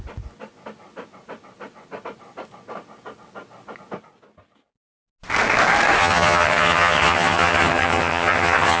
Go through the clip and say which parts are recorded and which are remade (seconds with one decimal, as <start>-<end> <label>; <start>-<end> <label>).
0.0-6.0 recorded; 6.0-8.8 remade